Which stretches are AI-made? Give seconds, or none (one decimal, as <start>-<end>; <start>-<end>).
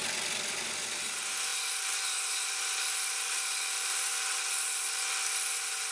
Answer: 0.0-0.6; 1.5-5.0